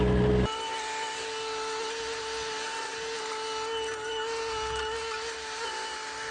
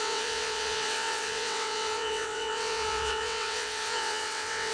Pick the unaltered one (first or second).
first